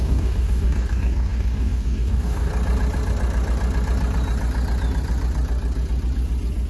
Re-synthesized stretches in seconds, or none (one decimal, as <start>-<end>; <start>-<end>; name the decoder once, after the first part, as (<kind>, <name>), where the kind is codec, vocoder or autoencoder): 0.0-2.5 (codec, DAC)